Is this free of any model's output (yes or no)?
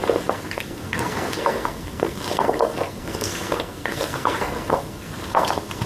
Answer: no